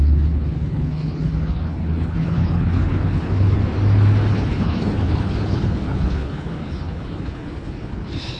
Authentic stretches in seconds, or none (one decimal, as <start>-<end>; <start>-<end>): 3.6-4.3